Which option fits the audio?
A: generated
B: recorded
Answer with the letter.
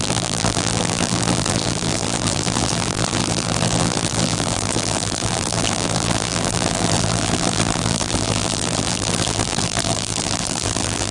A